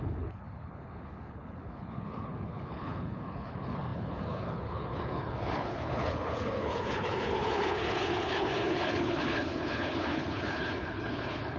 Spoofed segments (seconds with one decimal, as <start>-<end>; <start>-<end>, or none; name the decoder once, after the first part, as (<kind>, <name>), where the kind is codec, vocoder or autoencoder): 0.0-11.6 (codec, HILCodec)